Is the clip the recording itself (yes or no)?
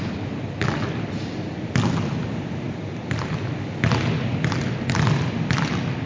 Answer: yes